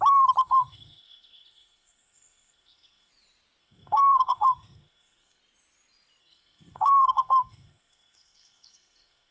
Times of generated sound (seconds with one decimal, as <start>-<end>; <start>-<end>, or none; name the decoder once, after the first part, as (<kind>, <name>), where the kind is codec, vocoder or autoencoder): 0.4-3.1 (codec, SNAC); 3.6-5.4; 6.2-9.3